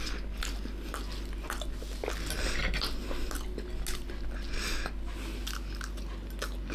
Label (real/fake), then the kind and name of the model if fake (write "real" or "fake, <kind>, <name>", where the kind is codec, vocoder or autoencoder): real